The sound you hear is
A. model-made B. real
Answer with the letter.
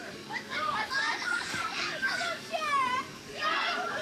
A